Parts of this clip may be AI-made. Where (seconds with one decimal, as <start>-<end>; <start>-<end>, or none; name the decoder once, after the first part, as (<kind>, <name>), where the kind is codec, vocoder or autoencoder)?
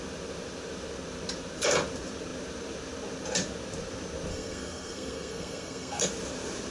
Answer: 4.3-6.1 (codec, SNAC)